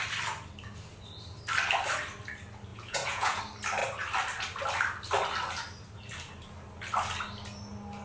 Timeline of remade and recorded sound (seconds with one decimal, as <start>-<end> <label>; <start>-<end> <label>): 0.0-2.7 recorded; 2.7-3.4 remade; 3.4-8.0 recorded